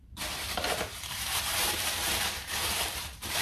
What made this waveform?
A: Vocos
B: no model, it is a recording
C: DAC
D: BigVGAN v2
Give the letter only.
D